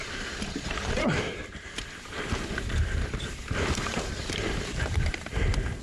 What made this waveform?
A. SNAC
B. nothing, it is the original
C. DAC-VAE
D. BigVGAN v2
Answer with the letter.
D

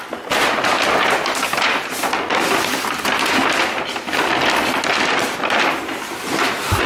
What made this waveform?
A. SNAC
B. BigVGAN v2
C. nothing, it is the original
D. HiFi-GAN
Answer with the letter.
C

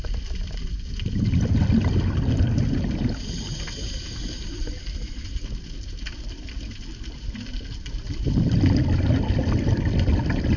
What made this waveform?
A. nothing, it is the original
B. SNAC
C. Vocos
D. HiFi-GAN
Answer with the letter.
A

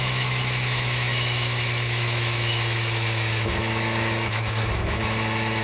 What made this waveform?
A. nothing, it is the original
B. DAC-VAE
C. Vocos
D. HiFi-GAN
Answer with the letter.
B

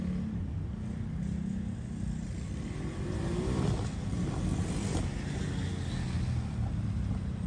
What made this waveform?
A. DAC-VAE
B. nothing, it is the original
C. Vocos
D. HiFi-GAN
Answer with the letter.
B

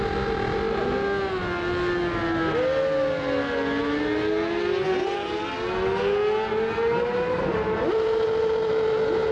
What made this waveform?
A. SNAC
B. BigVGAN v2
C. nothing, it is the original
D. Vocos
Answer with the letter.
C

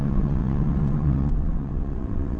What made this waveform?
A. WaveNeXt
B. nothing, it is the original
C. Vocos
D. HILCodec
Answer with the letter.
A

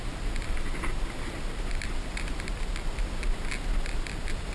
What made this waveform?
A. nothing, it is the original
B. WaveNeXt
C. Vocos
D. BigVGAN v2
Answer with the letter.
D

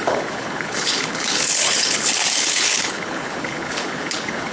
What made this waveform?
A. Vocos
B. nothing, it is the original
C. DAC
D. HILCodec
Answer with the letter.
D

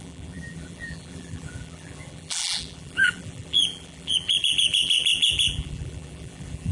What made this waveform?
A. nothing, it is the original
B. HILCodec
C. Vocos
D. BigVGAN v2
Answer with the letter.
D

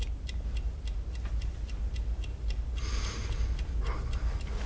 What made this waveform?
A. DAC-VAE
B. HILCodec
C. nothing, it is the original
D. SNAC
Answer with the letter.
C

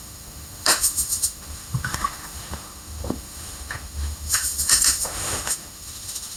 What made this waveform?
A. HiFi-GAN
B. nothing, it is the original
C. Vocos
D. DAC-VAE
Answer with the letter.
D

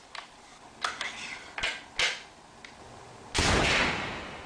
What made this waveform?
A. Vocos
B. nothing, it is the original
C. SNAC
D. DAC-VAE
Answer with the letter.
B